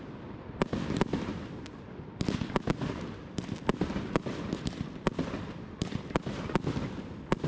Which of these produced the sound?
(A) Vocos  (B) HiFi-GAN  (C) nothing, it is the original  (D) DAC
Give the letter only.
C